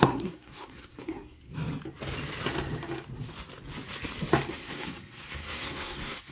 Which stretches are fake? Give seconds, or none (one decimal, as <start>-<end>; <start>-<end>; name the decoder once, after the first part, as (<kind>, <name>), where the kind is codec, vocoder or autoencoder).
0.0-1.5 (codec, SNAC); 4.5-6.3